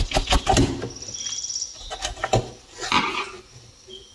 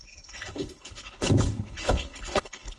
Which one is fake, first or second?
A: second